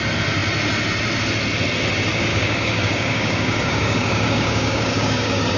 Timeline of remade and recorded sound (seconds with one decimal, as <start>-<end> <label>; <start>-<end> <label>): 0.0-2.3 recorded; 2.3-5.6 remade